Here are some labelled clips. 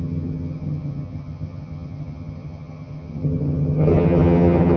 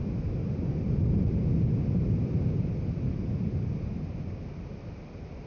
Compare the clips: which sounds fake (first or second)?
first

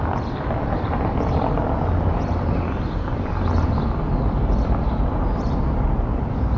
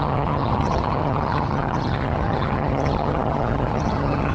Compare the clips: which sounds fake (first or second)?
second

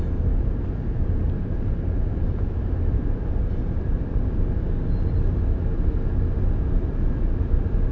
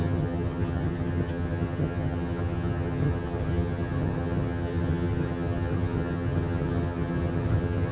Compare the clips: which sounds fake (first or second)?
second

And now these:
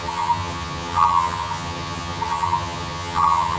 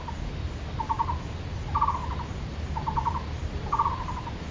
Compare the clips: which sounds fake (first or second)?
first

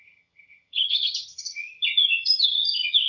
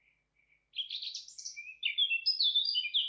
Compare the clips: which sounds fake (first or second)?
first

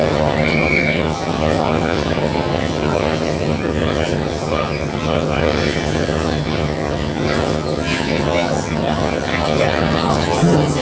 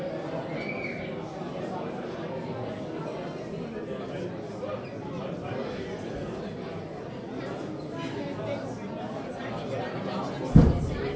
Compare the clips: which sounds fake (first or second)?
first